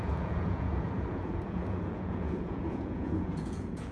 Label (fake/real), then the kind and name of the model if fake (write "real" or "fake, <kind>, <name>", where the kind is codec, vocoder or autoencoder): fake, vocoder, Vocos